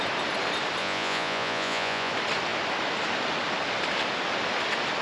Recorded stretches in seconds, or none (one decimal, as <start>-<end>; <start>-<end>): 0.0-0.8; 2.1-5.0